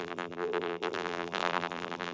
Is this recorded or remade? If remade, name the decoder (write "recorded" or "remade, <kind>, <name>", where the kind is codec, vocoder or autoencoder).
remade, vocoder, BigVGAN v2